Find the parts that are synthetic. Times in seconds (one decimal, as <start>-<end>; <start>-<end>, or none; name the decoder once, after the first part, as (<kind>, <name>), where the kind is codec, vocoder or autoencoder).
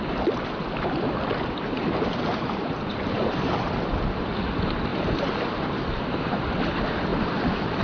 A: 2.3-3.5 (vocoder, BigVGAN v2); 4.9-6.4; 7.1-7.8